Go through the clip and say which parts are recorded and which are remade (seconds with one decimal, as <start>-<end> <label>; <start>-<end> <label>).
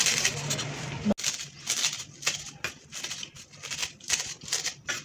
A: 0.0-5.0 recorded